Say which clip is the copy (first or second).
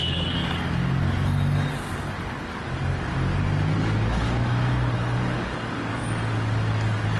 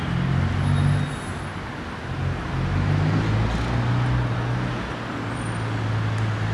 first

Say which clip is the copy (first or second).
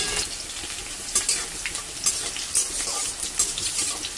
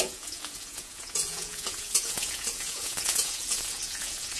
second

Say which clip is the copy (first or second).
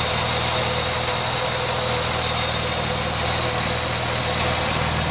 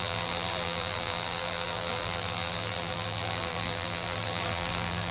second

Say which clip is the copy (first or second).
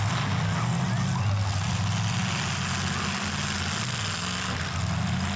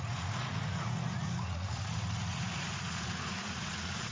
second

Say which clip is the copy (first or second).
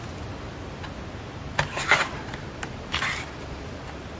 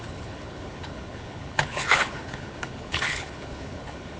second